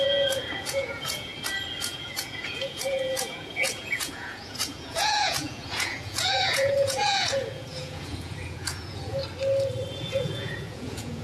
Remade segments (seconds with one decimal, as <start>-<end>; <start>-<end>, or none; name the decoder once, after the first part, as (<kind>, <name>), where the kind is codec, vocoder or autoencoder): 0.0-1.3 (vocoder, Vocos); 1.8-9.2; 10.0-11.2